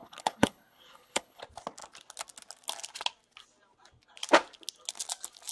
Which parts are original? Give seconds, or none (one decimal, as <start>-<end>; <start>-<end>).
1.4-5.5